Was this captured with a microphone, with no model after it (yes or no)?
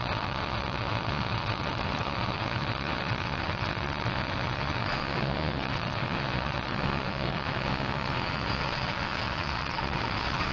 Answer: no